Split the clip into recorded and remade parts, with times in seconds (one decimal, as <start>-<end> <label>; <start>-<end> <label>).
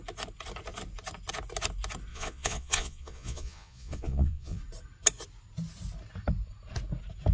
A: 0.0-2.1 recorded; 2.1-4.6 remade; 4.6-7.3 recorded